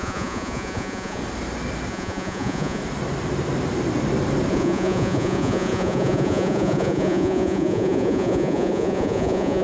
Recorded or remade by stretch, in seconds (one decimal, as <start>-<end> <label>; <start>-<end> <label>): 0.0-1.2 remade; 1.2-1.9 recorded; 1.9-2.8 remade; 2.8-4.5 recorded; 4.5-9.6 remade